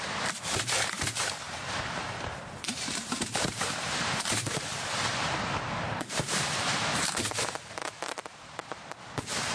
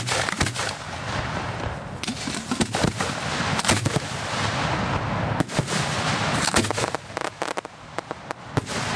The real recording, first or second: second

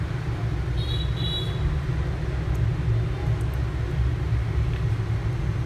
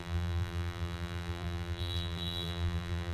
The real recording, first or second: first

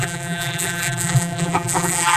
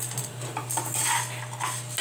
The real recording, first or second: second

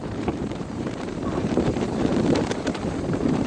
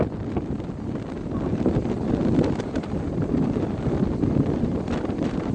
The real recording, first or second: second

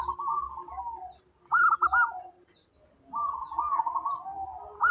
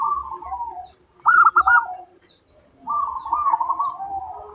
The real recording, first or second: first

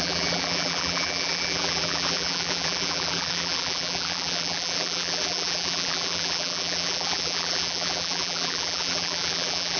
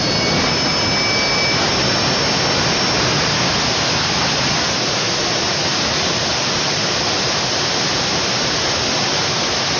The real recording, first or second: second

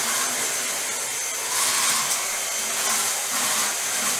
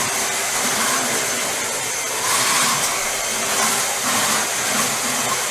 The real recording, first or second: first